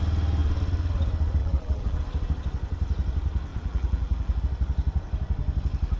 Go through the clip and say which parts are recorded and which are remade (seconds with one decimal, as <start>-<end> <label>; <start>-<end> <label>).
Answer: 0.0-1.4 recorded; 1.4-2.0 remade; 2.0-3.5 recorded; 3.5-4.4 remade; 4.4-6.0 recorded